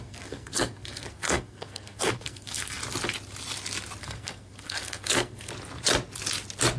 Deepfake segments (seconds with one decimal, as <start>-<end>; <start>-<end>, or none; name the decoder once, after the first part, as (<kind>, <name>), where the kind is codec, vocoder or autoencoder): 0.0-2.8 (codec, SNAC); 4.0-5.5